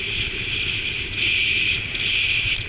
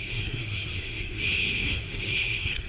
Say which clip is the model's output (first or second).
second